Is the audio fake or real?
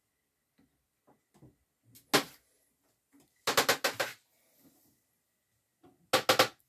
real